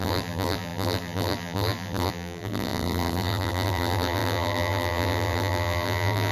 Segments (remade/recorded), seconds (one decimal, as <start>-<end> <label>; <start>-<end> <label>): 0.0-6.3 remade